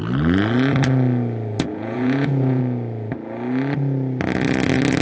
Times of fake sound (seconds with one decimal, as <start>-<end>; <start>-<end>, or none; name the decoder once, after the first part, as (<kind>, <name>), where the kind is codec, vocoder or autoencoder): 1.7-2.6 (vocoder, Vocos)